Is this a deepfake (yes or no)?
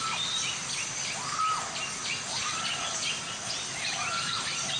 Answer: no